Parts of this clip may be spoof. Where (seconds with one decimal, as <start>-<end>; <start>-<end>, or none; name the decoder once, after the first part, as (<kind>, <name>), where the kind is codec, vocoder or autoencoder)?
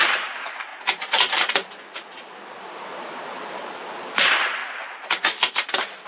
0.0-4.6 (vocoder, BigVGAN v2); 5.5-6.1